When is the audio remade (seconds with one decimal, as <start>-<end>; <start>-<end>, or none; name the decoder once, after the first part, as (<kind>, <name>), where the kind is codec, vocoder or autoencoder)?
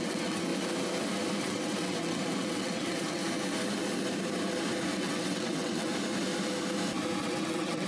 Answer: 0.0-0.5 (vocoder, WaveNeXt); 1.4-3.2; 4.9-5.9; 7.2-7.9